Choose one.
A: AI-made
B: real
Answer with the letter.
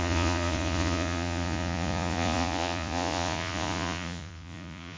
A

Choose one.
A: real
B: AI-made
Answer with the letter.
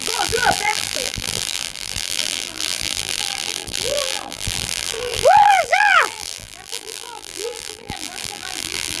B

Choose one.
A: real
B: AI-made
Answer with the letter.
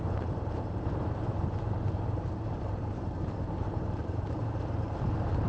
B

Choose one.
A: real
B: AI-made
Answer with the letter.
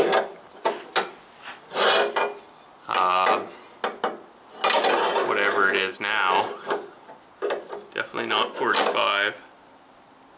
A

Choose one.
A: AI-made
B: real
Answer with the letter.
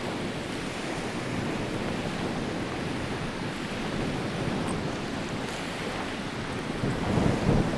B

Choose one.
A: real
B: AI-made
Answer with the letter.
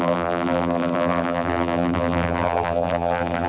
B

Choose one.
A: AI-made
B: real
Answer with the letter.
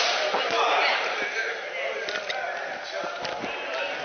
B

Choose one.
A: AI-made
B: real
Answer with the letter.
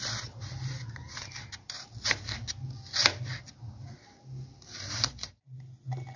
B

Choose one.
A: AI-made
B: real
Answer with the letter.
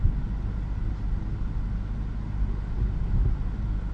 B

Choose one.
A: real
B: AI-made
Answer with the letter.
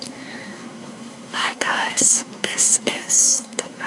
B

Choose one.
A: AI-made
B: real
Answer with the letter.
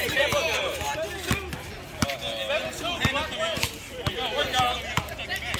B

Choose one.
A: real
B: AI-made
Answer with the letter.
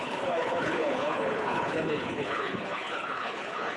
B